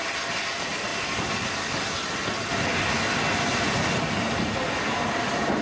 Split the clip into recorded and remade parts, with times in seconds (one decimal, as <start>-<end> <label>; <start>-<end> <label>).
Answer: 0.0-5.6 recorded